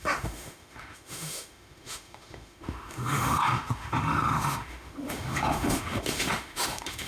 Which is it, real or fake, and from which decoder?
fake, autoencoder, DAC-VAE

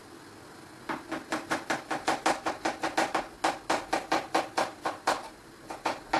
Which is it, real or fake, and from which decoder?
real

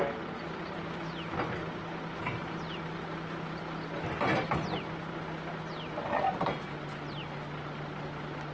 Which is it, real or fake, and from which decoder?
real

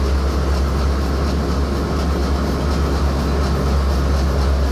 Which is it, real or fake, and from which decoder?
real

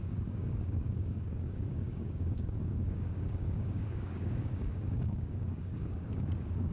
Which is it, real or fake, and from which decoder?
fake, codec, DAC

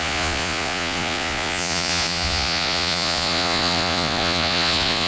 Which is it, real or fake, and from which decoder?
fake, vocoder, Vocos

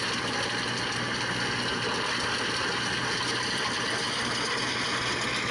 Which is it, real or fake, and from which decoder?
real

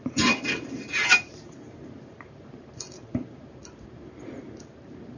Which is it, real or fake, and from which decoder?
fake, vocoder, BigVGAN v2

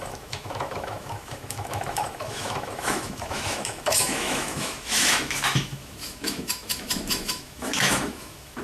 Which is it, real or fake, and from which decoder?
fake, autoencoder, DAC-VAE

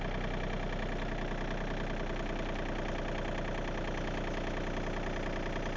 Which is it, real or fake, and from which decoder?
real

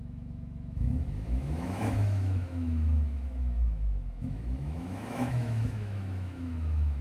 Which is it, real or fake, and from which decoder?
fake, autoencoder, DAC-VAE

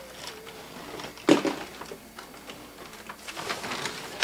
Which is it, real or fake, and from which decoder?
real